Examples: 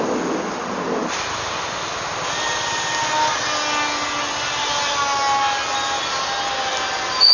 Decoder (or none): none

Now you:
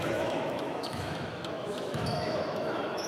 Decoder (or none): autoencoder, DAC-VAE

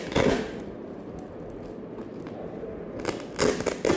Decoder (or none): none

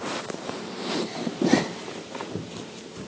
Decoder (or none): vocoder, BigVGAN v2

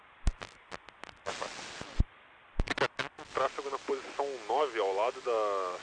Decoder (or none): none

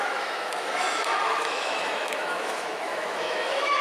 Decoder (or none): autoencoder, DAC-VAE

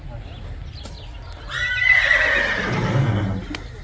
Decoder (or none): none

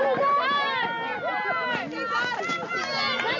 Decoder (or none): none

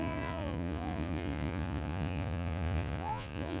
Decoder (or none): vocoder, Vocos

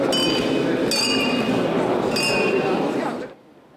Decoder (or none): none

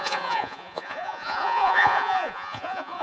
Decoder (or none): vocoder, Vocos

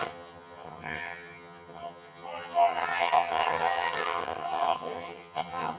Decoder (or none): vocoder, HiFi-GAN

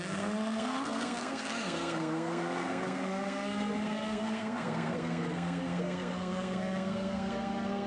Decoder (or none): codec, SNAC